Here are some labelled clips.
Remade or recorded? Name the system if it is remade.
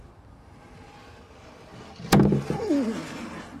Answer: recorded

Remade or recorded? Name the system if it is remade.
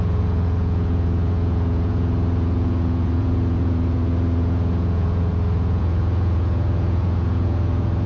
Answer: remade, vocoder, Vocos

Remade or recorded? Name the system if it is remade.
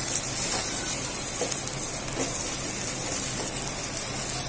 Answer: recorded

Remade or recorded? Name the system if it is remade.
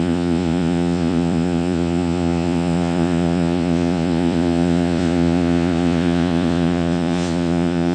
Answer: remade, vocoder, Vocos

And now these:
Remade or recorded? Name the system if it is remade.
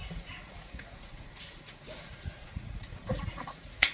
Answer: remade, vocoder, Vocos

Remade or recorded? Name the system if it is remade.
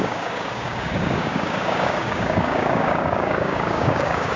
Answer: remade, codec, DAC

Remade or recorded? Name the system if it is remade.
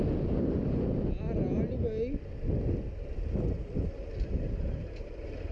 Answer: recorded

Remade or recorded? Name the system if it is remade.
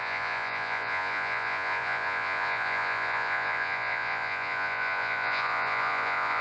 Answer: remade, vocoder, Vocos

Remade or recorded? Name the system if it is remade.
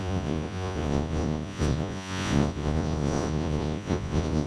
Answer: remade, vocoder, Vocos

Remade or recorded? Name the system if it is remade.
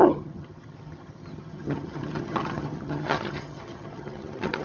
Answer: remade, vocoder, HiFi-GAN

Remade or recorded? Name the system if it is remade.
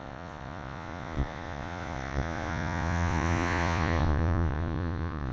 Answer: remade, vocoder, Vocos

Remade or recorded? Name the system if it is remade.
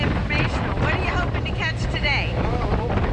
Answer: recorded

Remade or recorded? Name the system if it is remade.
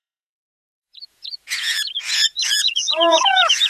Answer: remade, vocoder, Vocos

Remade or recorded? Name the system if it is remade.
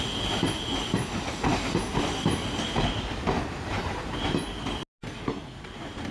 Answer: recorded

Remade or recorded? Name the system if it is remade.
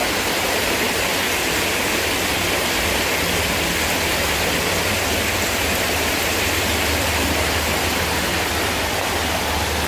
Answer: recorded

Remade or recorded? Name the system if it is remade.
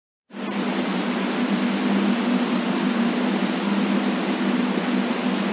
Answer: recorded